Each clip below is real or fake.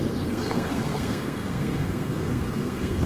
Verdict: fake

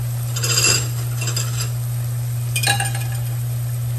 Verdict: real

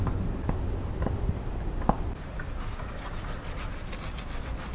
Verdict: real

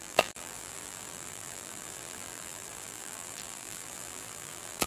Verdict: fake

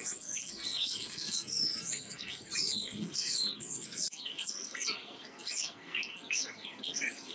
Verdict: fake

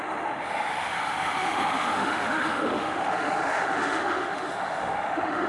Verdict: fake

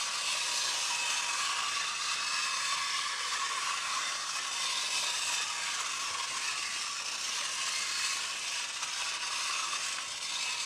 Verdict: real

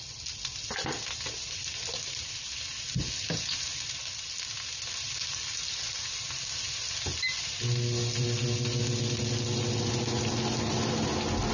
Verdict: real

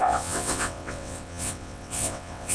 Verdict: fake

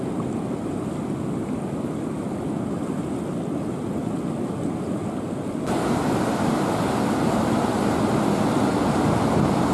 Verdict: real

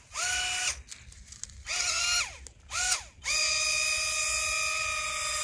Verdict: real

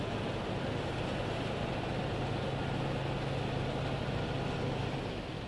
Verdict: real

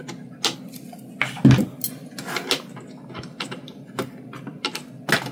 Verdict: real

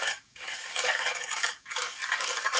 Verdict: fake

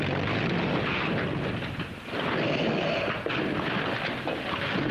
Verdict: real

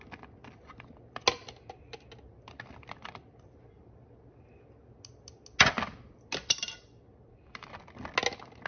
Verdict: real